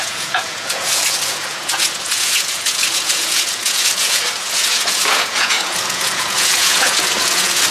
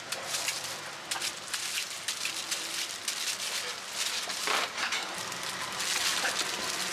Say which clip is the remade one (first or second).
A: first